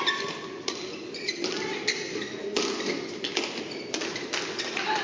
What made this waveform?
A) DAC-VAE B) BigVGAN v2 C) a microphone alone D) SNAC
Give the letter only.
C